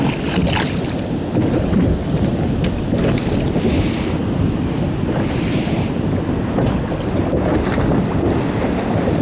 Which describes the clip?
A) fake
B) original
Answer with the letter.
B